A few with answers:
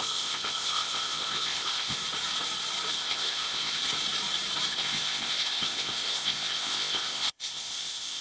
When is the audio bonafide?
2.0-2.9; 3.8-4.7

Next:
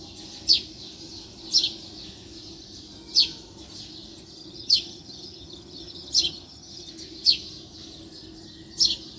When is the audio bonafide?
0.0-4.4; 6.9-9.2

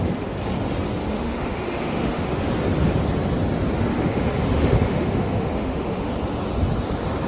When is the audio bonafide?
0.0-1.1; 2.5-3.9; 6.1-7.3

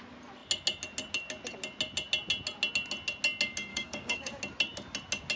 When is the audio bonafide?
0.0-3.7; 4.4-5.4

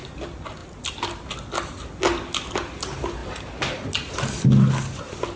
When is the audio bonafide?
0.0-5.4

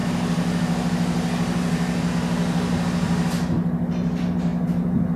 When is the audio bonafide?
0.0-5.2

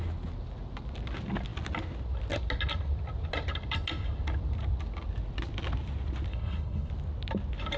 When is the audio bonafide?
0.0-6.3; 6.9-7.8